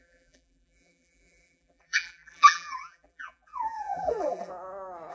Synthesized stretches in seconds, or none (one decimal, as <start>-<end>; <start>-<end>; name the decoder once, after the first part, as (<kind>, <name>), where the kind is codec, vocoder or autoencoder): 0.0-4.5 (vocoder, BigVGAN v2)